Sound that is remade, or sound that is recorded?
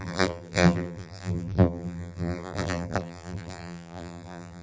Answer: remade